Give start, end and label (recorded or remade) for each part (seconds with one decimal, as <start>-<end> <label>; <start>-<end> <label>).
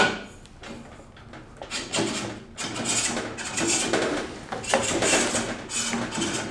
0.0-4.8 recorded; 4.8-5.3 remade; 5.3-6.5 recorded